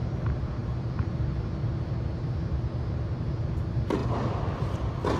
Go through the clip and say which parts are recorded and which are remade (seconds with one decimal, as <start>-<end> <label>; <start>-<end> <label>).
0.0-5.2 recorded